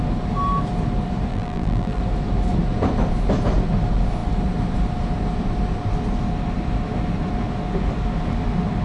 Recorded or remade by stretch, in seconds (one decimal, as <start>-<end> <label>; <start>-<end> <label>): 0.0-1.3 recorded; 1.3-2.0 remade; 2.0-8.8 recorded